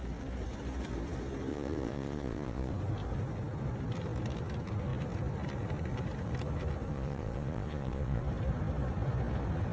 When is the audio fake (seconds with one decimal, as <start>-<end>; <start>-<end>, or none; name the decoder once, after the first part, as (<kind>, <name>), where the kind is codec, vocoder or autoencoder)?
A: 1.5-2.7 (vocoder, Vocos); 6.9-8.2